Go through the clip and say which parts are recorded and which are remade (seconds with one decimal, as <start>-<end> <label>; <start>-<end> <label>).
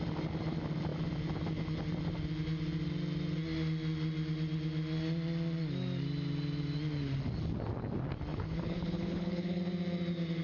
0.0-8.3 recorded; 8.3-9.6 remade; 9.6-10.4 recorded